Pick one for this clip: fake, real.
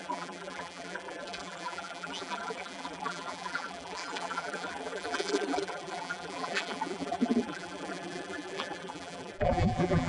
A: fake